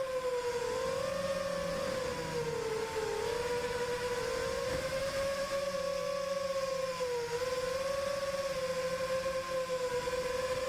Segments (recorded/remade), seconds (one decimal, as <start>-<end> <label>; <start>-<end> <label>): 0.0-10.7 recorded